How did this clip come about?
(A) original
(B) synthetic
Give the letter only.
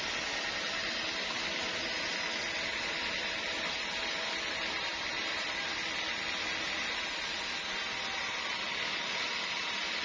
A